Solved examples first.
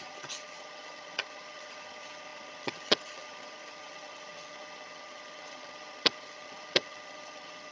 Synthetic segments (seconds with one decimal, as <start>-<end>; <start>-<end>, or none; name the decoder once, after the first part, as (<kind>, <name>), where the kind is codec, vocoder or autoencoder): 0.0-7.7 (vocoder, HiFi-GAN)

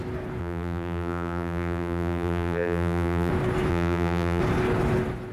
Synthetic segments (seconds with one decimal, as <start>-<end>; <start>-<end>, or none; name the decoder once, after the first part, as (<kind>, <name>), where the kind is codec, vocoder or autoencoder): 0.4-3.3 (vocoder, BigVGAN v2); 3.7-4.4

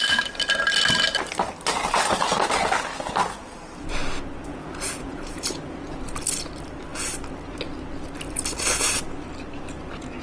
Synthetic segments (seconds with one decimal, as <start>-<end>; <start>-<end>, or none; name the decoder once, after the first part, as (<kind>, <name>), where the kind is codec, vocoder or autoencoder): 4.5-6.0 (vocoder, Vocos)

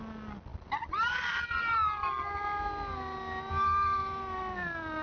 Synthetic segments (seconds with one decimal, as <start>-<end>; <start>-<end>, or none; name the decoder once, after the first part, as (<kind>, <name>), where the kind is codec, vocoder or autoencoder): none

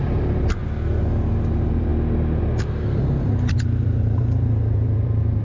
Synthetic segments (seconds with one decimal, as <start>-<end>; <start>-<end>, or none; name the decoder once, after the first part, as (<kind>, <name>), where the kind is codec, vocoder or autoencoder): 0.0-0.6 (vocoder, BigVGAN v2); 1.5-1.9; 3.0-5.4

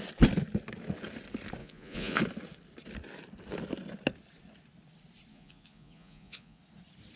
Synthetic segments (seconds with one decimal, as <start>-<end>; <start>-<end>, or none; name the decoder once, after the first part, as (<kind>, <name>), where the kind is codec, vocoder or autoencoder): 1.6-2.2 (vocoder, Vocos); 5.3-6.6

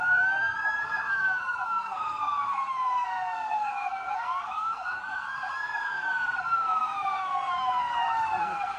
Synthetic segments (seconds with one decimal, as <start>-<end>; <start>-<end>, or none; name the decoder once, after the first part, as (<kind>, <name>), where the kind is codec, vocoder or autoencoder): 0.0-7.9 (codec, SNAC); 8.4-8.8

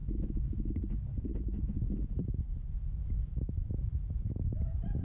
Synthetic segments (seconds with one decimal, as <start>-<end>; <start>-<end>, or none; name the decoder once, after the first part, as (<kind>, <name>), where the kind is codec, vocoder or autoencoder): 0.0-0.7 (autoencoder, DAC-VAE)